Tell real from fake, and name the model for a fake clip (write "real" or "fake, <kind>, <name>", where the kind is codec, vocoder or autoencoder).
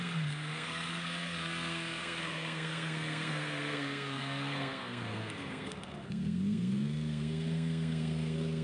fake, codec, SNAC